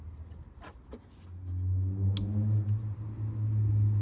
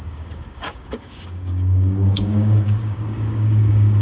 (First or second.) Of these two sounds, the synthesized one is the second